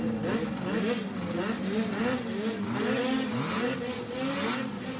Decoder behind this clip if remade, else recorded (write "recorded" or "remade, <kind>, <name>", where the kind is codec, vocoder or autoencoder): recorded